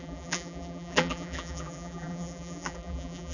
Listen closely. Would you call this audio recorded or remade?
remade